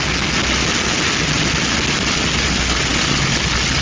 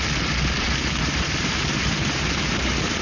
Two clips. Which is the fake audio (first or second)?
second